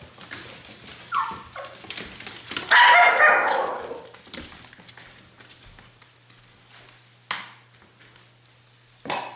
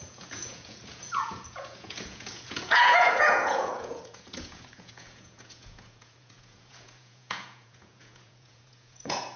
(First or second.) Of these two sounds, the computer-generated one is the second